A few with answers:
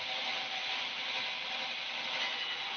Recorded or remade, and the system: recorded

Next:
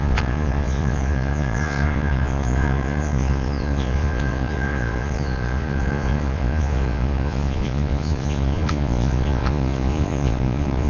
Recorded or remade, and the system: remade, vocoder, Vocos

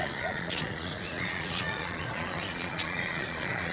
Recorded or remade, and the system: remade, vocoder, Vocos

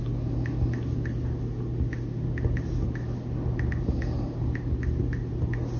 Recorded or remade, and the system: recorded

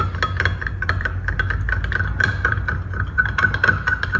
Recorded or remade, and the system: recorded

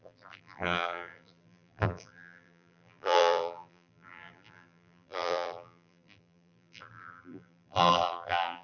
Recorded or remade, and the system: remade, vocoder, BigVGAN v2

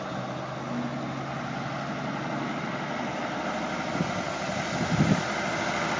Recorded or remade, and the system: recorded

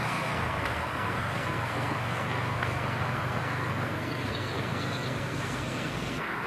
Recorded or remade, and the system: remade, codec, SNAC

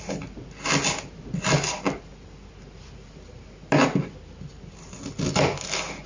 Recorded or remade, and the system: recorded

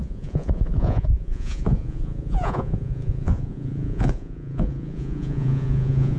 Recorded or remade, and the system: remade, vocoder, Vocos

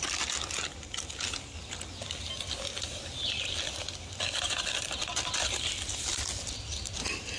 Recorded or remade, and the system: recorded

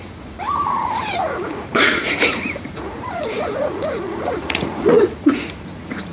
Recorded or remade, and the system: remade, vocoder, Vocos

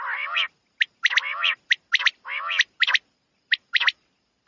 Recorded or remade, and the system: recorded